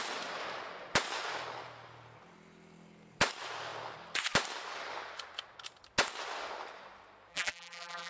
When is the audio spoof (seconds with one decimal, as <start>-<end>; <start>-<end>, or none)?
7.3-8.1